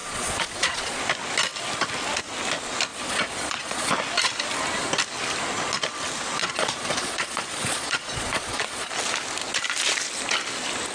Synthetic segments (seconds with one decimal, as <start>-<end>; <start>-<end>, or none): 0.0-1.0; 2.9-3.9; 6.4-8.9